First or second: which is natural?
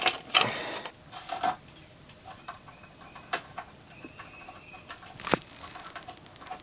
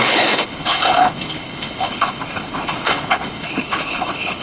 first